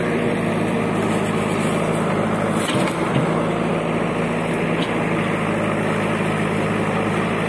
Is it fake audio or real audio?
real